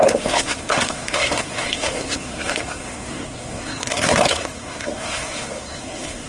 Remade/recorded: remade